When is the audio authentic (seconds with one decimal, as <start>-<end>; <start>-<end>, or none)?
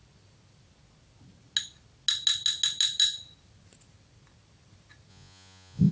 0.0-5.1